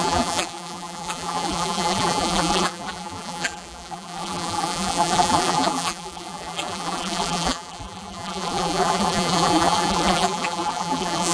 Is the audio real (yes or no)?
no